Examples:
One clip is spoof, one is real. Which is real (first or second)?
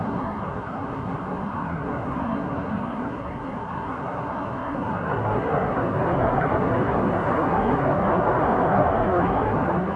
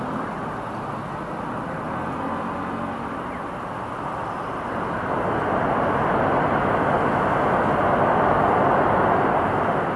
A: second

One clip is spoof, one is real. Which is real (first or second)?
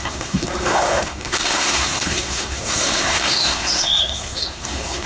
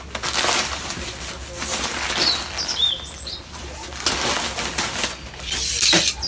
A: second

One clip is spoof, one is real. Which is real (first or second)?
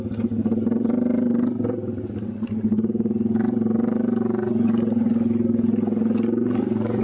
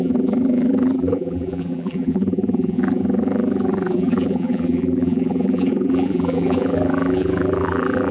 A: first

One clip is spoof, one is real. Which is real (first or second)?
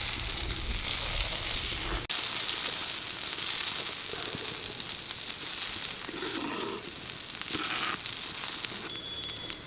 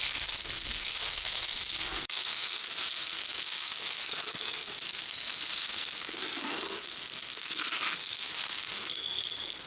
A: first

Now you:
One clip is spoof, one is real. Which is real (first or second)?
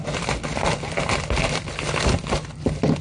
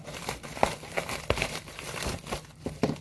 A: first